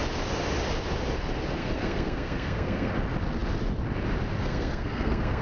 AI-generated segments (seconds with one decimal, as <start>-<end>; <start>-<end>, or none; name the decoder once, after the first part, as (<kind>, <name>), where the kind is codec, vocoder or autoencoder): 1.6-2.9 (codec, SNAC); 4.4-5.4